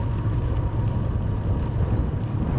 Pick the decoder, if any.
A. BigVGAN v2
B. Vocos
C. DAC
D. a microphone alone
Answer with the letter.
D